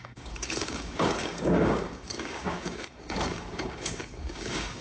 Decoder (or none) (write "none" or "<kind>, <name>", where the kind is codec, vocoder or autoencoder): codec, DAC